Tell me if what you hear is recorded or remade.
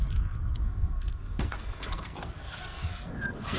remade